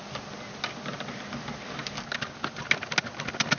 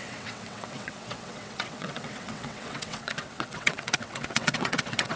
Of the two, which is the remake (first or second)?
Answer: second